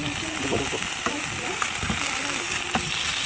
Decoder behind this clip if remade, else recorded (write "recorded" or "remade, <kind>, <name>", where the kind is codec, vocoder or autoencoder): recorded